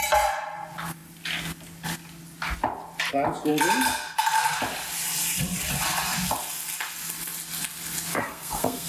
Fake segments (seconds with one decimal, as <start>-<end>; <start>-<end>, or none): 8.1-8.9